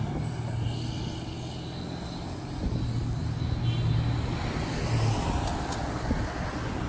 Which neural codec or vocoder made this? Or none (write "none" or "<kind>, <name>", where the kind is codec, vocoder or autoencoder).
none